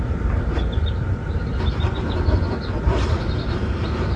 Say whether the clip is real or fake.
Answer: fake